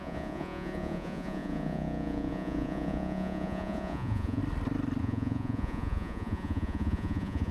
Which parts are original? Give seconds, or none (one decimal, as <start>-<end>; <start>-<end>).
4.4-5.0